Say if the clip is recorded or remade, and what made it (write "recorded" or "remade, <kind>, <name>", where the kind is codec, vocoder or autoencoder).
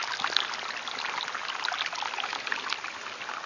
recorded